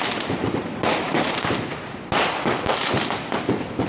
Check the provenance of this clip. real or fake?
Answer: fake